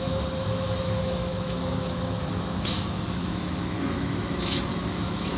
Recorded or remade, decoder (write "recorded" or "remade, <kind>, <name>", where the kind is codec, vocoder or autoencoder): remade, autoencoder, DAC-VAE